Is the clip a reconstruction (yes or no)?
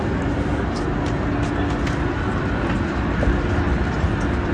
no